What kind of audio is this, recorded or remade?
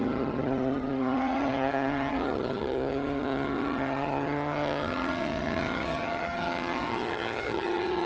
remade